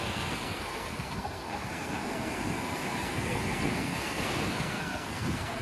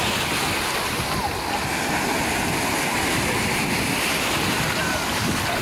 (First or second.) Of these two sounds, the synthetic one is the first